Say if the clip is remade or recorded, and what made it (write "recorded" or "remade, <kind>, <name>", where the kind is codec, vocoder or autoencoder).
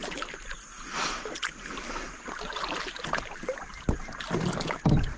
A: recorded